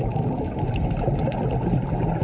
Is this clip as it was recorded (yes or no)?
yes